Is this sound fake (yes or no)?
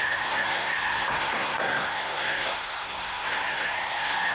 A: yes